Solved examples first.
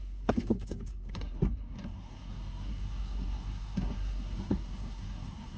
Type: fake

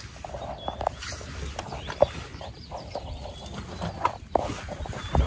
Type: real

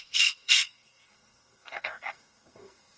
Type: fake